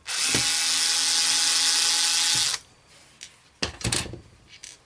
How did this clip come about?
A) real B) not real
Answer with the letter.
A